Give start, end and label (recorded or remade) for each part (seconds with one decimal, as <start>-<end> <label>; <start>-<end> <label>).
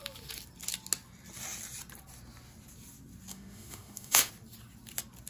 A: 0.0-3.3 recorded; 3.3-4.3 remade; 4.3-5.3 recorded